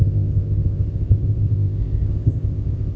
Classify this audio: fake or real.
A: fake